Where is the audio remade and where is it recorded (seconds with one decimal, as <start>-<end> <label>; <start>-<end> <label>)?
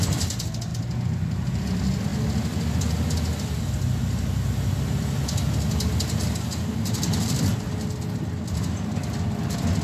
0.0-9.8 recorded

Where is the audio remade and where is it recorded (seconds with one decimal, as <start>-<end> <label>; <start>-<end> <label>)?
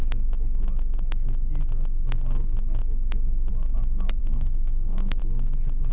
0.0-4.2 recorded; 4.2-5.2 remade; 5.2-5.9 recorded